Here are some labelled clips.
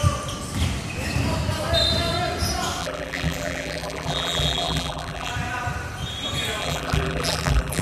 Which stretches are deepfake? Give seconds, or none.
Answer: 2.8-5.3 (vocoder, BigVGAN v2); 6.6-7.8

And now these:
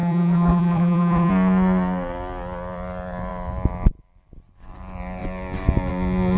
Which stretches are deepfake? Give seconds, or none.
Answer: 0.0-1.3 (vocoder, BigVGAN v2)

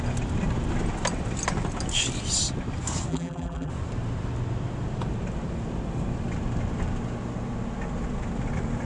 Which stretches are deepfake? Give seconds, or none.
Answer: 3.1-3.7 (vocoder, BigVGAN v2)

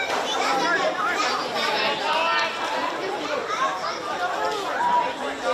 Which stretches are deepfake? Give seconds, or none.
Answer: none